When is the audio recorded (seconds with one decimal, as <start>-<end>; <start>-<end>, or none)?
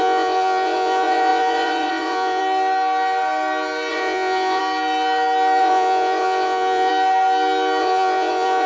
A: 2.4-3.9; 4.6-5.6; 6.9-7.8